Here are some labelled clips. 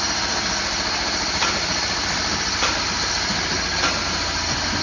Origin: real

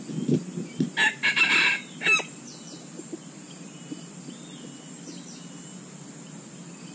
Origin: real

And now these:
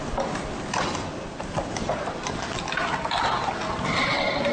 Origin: real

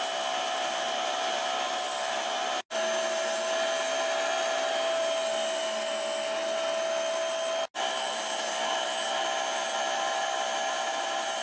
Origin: real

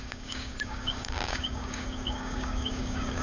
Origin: fake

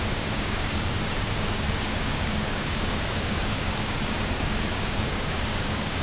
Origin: fake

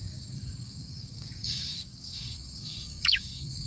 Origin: fake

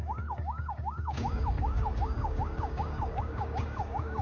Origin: fake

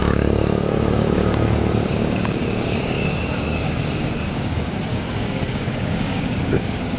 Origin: fake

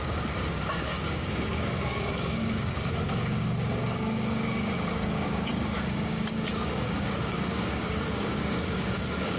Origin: fake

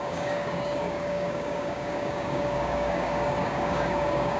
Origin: fake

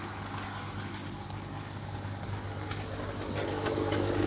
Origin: fake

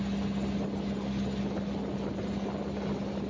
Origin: real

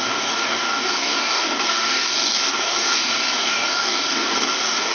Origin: fake